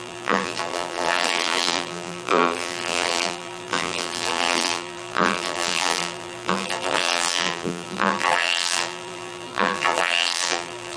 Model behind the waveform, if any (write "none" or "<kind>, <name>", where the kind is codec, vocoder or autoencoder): vocoder, BigVGAN v2